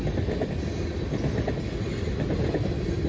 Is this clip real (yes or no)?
yes